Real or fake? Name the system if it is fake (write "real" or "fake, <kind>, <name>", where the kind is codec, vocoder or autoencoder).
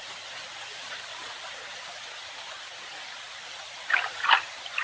real